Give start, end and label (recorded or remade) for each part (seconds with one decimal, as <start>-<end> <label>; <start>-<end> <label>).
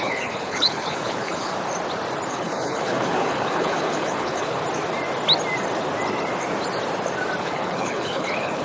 0.0-1.5 remade; 1.5-2.3 recorded; 2.3-4.6 remade; 4.6-7.4 recorded; 7.4-8.6 remade